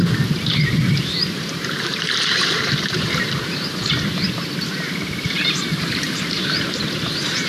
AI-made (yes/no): yes